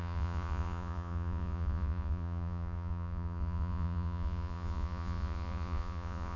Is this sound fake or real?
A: fake